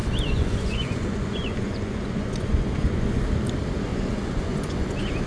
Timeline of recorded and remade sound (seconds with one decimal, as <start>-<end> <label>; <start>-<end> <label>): 0.0-3.2 remade; 3.2-3.9 recorded; 3.9-5.3 remade